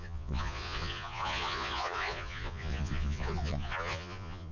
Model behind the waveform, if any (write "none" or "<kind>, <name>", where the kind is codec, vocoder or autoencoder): vocoder, Vocos